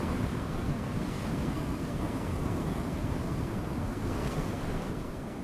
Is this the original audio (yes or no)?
no